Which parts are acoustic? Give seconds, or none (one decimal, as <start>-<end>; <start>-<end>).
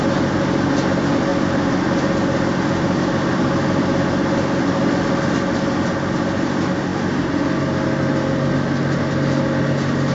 0.0-10.1